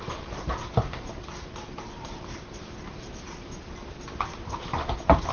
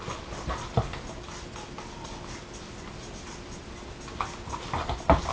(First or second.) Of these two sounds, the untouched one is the second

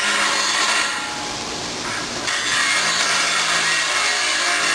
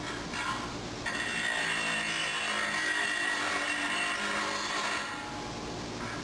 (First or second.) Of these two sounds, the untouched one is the second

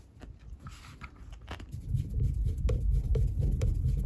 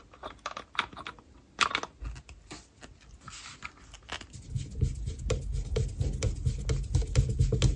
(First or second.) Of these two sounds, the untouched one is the second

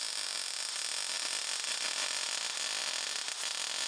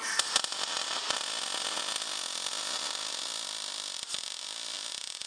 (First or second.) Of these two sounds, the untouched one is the first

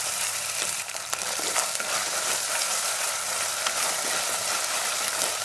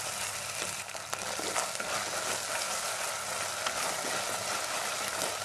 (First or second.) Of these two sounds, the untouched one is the second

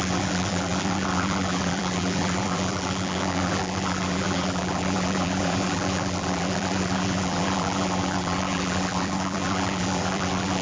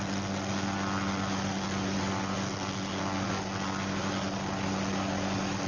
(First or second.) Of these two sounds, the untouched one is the second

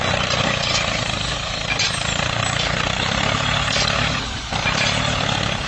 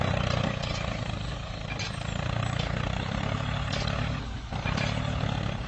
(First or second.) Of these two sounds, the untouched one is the second